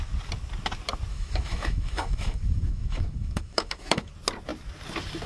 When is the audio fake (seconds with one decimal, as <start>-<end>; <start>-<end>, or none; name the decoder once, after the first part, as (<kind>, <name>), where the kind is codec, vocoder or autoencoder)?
1.1-4.1 (autoencoder, DAC-VAE)